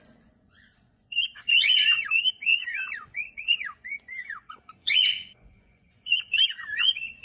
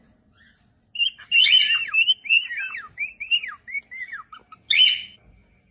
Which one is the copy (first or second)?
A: first